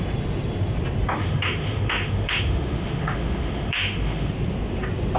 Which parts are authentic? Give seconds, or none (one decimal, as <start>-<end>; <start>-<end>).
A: 0.0-1.2; 4.3-5.2